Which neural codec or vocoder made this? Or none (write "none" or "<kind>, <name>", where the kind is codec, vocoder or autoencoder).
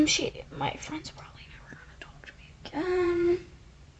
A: vocoder, Vocos